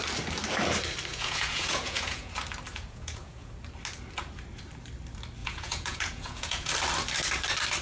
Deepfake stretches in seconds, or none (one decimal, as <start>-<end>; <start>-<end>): 1.1-2.3; 2.7-3.5; 5.4-6.7